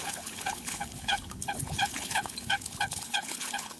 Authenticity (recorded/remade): remade